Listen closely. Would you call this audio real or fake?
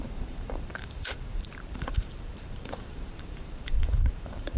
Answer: fake